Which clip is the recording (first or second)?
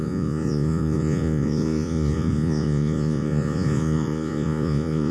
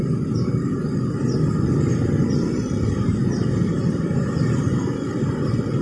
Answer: second